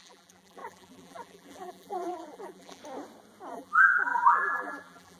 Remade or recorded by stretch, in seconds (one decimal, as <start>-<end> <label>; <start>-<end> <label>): 0.0-2.8 remade; 2.8-3.5 recorded; 3.5-5.2 remade